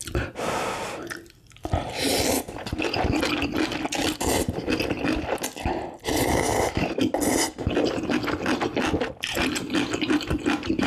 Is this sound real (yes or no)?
yes